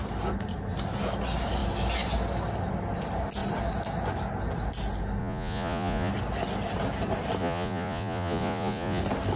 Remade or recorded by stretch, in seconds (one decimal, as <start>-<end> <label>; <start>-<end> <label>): 0.0-5.2 recorded; 5.2-6.1 remade; 6.1-7.4 recorded; 7.4-9.0 remade; 9.0-9.4 recorded